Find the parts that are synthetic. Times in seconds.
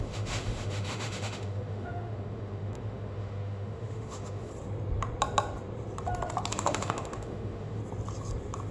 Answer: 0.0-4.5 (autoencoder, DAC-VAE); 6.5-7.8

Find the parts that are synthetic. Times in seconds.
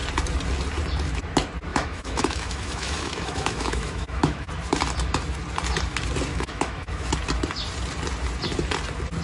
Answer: 1.7-4.5 (autoencoder, DAC-VAE); 6.3-7.1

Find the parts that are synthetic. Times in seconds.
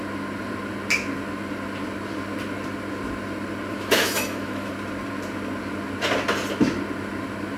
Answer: 3.7-4.7 (autoencoder, DAC-VAE)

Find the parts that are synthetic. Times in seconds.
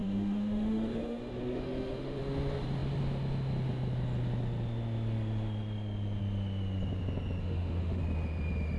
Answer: 0.0-2.2 (autoencoder, DAC-VAE); 7.4-8.0